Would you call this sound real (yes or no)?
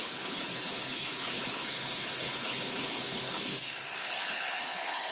no